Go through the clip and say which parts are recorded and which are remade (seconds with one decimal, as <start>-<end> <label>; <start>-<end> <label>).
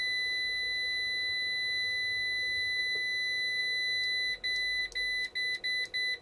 0.0-6.2 recorded